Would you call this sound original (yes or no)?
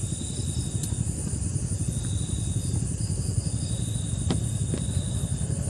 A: no